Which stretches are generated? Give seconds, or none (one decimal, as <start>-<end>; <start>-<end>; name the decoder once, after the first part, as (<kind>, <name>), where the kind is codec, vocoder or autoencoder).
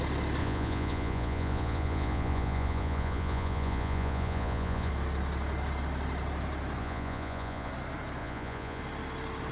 0.4-4.9 (vocoder, Vocos); 6.8-7.7; 8.2-8.8